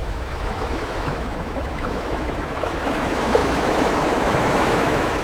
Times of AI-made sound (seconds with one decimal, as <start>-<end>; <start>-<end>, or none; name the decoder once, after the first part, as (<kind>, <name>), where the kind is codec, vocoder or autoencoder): 0.0-5.2 (autoencoder, DAC-VAE)